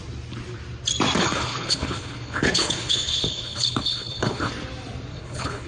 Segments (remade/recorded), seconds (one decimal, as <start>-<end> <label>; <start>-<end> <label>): 0.0-1.2 recorded; 1.2-4.5 remade; 4.5-5.1 recorded; 5.1-5.7 remade